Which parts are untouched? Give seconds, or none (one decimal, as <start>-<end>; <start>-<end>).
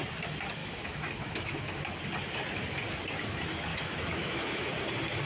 0.0-0.6; 1.9-3.7; 4.7-5.3